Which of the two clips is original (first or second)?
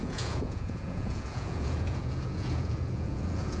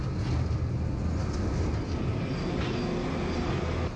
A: second